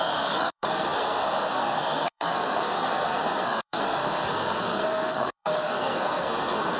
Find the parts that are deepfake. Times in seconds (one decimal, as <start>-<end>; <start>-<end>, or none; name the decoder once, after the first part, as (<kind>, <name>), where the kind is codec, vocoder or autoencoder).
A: 0.0-6.8 (codec, SNAC)